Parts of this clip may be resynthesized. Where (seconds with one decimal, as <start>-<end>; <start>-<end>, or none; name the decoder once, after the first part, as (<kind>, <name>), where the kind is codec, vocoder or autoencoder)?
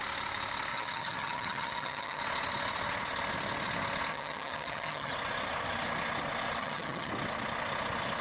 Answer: 0.7-2.2 (vocoder, HiFi-GAN); 4.1-5.1; 6.6-7.1